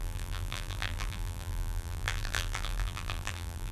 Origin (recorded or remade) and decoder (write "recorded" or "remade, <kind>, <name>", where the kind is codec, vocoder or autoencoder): remade, vocoder, BigVGAN v2